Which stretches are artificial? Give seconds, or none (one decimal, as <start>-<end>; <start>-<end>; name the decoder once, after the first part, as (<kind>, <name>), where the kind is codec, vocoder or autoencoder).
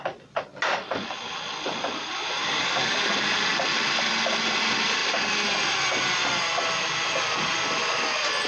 2.0-2.6 (vocoder, BigVGAN v2)